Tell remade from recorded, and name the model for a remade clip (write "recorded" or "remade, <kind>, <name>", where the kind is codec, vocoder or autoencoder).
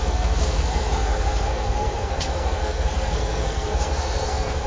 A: remade, codec, SNAC